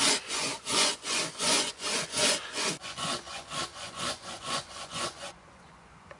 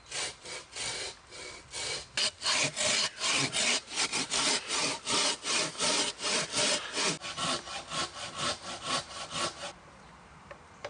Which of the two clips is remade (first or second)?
first